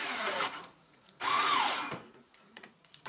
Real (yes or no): no